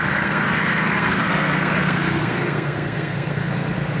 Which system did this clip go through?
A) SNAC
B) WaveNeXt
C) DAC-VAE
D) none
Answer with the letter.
A